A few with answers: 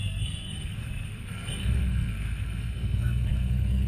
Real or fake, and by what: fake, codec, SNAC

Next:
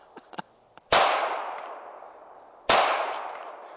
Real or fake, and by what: real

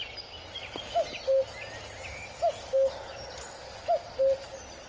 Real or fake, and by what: real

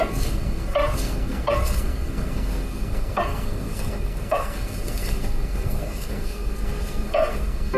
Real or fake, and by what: fake, codec, SNAC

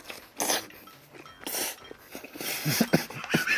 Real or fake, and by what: real